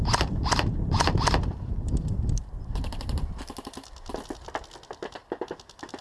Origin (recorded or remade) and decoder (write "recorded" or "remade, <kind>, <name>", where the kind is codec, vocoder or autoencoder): recorded